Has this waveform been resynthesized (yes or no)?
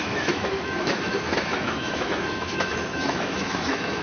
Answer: yes